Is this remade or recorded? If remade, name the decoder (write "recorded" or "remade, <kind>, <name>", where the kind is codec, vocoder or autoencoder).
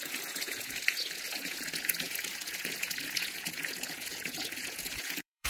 remade, vocoder, Vocos